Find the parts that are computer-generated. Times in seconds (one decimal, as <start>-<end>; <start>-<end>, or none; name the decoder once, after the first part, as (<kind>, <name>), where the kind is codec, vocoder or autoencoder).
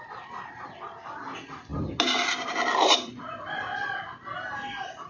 none